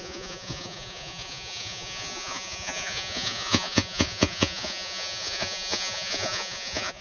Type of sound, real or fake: fake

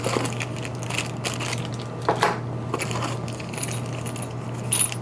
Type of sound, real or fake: real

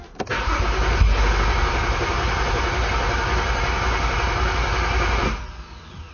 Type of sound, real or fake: real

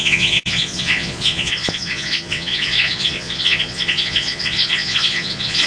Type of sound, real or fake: fake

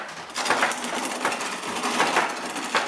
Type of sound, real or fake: real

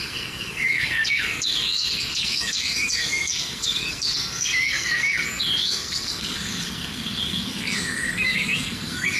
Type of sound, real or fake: fake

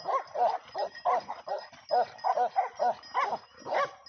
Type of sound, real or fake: real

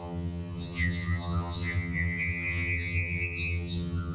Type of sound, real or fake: fake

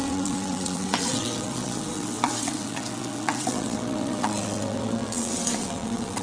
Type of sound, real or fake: fake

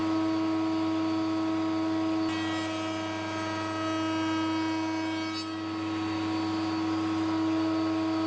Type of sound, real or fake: real